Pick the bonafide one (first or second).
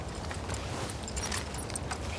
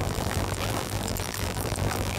first